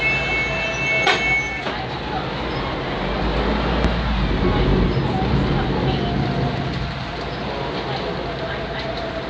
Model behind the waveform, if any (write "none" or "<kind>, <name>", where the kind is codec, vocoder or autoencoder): none